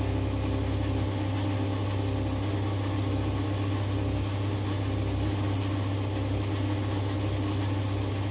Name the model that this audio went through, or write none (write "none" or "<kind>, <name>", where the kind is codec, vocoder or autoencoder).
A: none